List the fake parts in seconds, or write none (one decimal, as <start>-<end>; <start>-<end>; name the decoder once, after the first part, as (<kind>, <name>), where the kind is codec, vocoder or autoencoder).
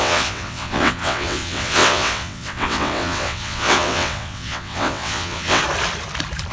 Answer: 0.0-5.6 (vocoder, WaveNeXt)